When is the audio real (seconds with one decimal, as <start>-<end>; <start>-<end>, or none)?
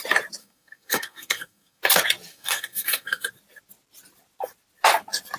0.0-0.4; 1.8-2.3; 3.3-5.4